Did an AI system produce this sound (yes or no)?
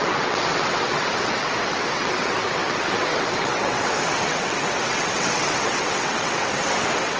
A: yes